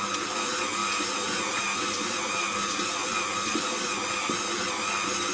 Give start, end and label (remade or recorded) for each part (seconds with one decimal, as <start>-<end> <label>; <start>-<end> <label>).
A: 0.0-5.3 recorded